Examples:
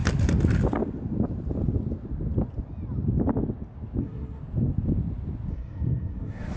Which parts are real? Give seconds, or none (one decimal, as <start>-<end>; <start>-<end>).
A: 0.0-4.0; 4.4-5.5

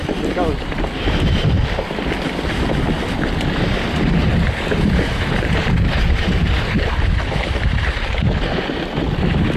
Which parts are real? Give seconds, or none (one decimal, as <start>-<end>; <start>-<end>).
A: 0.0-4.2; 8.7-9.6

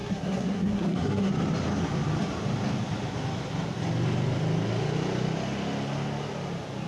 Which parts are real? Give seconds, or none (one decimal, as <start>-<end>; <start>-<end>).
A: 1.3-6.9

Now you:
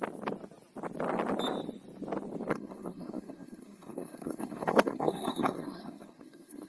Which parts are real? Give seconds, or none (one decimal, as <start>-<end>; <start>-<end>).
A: 0.0-2.5

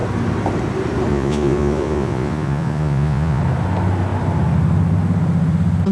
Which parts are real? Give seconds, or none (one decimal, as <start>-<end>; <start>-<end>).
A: 0.0-1.1; 3.4-5.9

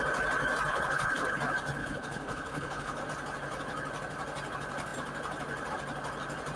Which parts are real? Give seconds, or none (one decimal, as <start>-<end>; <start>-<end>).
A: 0.0-0.7; 1.4-1.8; 3.0-6.6